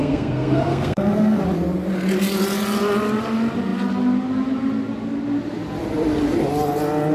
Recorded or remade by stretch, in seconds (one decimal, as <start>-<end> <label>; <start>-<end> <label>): 0.0-1.4 remade; 1.4-7.1 recorded